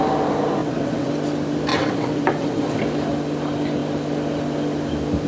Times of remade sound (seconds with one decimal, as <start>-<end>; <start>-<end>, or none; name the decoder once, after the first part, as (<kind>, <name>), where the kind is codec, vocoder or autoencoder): 0.6-1.1 (vocoder, WaveNeXt); 1.7-2.8